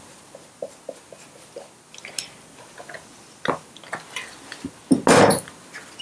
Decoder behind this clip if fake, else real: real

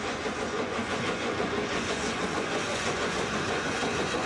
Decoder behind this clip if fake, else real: fake, vocoder, Vocos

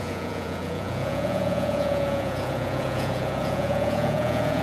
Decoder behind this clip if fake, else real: fake, vocoder, Vocos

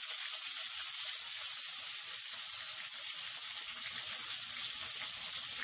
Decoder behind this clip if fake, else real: real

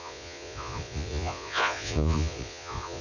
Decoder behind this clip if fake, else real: fake, vocoder, Vocos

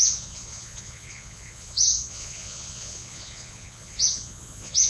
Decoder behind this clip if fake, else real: fake, vocoder, Vocos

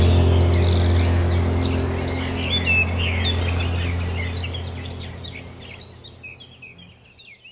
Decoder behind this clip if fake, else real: real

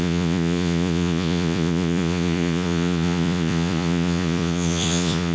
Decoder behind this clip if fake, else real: fake, vocoder, Vocos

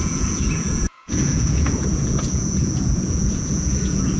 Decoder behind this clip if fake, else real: fake, vocoder, Vocos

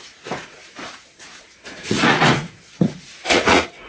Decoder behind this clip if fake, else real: fake, vocoder, Vocos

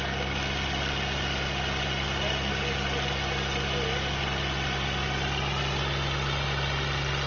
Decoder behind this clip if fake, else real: real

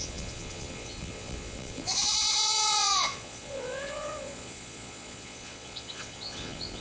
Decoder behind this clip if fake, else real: fake, vocoder, Vocos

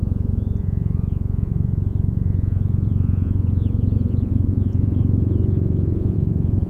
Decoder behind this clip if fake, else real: fake, vocoder, Vocos